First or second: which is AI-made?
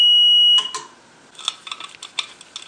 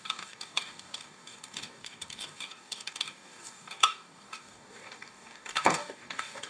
second